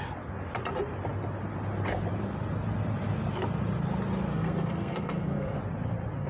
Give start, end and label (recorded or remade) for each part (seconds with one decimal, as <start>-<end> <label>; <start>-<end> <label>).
0.0-4.3 recorded; 4.3-5.6 remade; 5.6-6.3 recorded